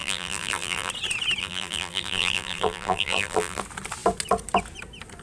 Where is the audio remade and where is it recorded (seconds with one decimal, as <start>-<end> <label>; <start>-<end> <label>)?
0.0-0.9 remade; 0.9-1.4 recorded; 1.4-3.6 remade; 3.6-5.2 recorded